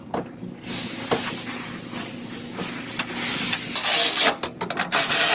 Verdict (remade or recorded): recorded